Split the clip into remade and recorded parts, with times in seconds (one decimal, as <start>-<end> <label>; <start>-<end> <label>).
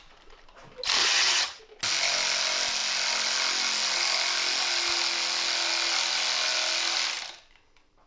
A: 0.0-1.0 recorded; 1.0-1.6 remade; 1.6-8.1 recorded